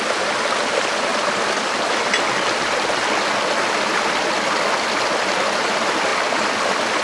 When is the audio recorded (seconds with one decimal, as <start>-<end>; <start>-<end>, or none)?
0.0-7.0

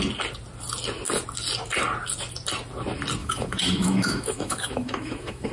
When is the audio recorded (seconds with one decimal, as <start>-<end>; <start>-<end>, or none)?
0.0-3.2

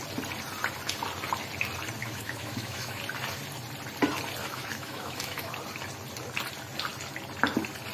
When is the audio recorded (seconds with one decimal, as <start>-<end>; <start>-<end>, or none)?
0.0-2.0; 3.0-4.4; 5.5-7.9

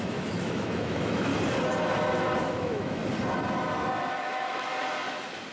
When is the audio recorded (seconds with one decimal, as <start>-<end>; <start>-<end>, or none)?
1.3-2.4; 3.0-4.2; 4.7-5.5

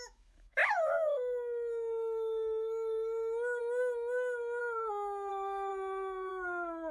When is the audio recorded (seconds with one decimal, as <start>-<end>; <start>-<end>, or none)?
4.6-5.3; 5.7-6.3

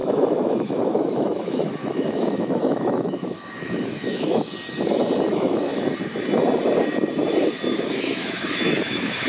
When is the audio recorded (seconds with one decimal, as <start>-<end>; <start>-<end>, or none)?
4.5-5.3; 5.7-7.9

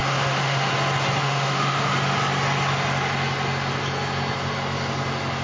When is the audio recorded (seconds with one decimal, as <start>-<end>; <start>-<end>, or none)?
0.7-1.2; 1.9-5.4